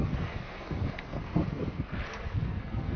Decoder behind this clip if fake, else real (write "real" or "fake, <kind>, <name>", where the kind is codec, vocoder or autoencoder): fake, codec, SNAC